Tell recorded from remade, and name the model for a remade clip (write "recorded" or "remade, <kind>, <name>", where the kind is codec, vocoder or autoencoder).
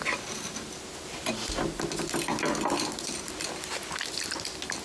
recorded